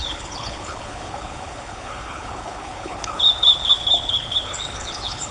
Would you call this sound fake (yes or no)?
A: yes